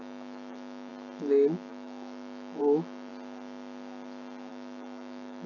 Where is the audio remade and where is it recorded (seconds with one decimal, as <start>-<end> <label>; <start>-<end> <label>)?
0.0-0.9 remade; 0.9-1.7 recorded; 1.7-3.1 remade; 3.1-4.5 recorded; 4.5-5.5 remade